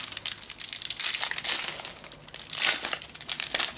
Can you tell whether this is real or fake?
real